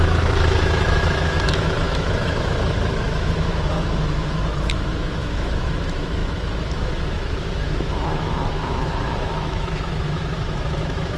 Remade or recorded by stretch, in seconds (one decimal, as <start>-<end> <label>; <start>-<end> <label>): 0.0-11.2 remade